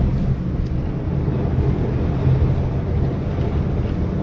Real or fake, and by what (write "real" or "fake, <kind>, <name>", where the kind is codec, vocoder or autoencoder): real